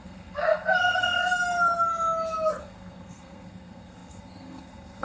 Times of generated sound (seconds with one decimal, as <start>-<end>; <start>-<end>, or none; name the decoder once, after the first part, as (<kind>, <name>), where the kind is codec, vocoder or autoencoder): 0.0-1.2 (codec, SNAC); 2.6-5.0